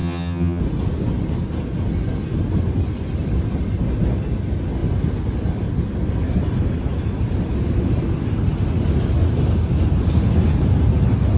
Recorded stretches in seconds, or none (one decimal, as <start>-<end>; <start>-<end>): 0.6-11.4